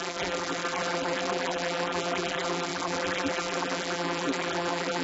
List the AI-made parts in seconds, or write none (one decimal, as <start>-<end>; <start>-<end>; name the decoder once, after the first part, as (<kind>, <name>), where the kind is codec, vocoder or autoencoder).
0.0-5.0 (vocoder, BigVGAN v2)